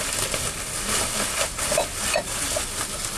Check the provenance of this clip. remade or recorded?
recorded